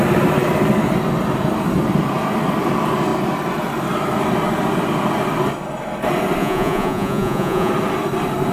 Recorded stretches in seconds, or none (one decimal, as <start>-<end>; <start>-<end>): 0.0-6.4; 7.7-8.5